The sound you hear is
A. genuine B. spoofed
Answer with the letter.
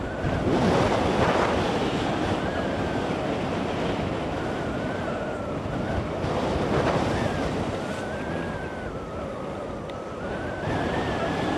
A